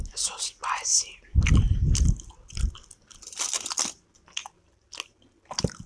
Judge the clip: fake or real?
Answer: real